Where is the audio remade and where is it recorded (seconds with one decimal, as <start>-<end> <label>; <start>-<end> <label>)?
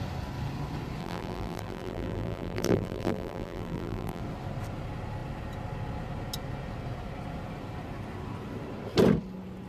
0.0-1.0 recorded; 1.0-4.2 remade; 4.2-9.7 recorded